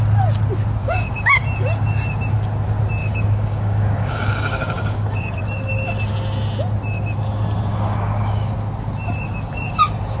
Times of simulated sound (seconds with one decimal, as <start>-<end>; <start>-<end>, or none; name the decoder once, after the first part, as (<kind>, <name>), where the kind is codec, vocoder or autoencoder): 0.8-1.4 (codec, DAC); 3.0-5.4; 7.7-8.5